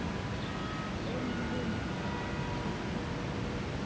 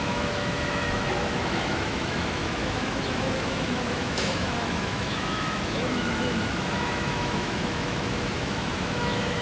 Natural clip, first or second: first